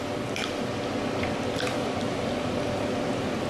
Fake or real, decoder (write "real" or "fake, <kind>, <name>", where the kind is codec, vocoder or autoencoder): real